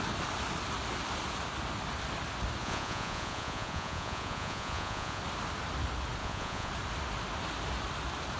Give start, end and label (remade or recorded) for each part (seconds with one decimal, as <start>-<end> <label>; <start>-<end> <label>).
0.0-2.6 recorded; 2.6-5.2 remade; 5.2-6.2 recorded; 6.2-6.7 remade; 6.7-8.4 recorded